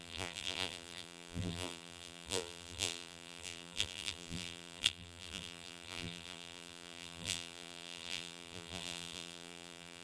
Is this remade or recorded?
remade